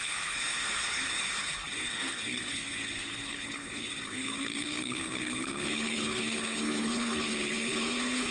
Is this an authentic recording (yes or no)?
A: no